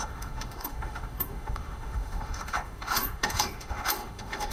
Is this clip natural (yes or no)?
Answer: no